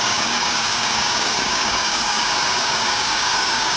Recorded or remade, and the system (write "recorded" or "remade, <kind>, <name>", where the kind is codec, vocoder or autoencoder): remade, codec, DAC